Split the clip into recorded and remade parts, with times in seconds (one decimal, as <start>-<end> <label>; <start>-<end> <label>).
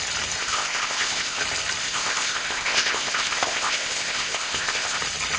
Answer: 0.0-0.4 recorded; 0.4-1.4 remade; 1.4-1.8 recorded; 1.8-5.0 remade; 5.0-5.4 recorded